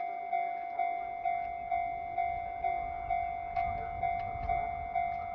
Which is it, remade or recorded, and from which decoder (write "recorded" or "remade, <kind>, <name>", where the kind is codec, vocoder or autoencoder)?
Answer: recorded